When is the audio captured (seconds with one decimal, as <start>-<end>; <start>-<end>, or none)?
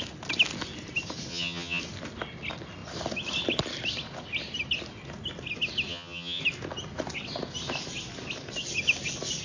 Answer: 0.0-1.3; 1.8-5.9; 6.4-9.4